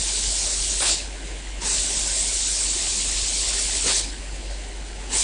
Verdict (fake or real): fake